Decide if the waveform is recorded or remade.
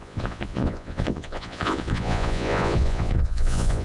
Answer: remade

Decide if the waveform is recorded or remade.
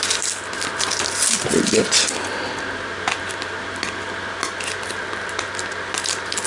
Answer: recorded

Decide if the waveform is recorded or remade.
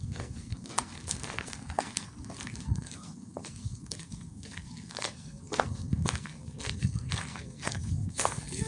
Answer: remade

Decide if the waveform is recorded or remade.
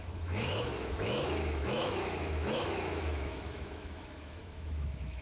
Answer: remade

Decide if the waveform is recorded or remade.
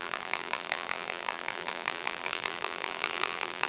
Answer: remade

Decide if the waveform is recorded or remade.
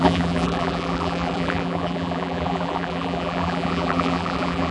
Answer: remade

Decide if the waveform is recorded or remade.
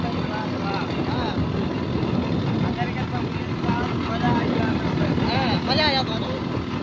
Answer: recorded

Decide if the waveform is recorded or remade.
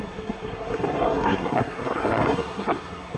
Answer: remade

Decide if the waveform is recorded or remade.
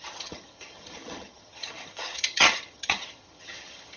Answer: remade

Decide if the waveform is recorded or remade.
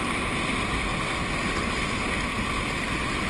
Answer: recorded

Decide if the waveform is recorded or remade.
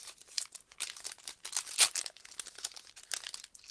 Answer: recorded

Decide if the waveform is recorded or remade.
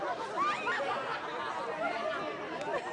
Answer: recorded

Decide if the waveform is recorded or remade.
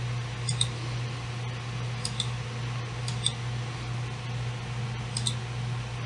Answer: recorded